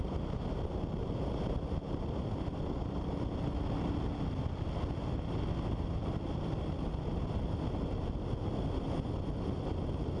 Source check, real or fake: real